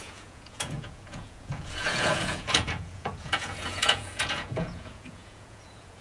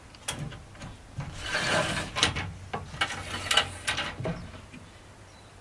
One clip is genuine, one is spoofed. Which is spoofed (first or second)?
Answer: first